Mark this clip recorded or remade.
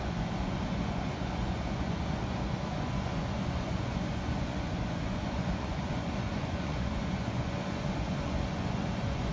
remade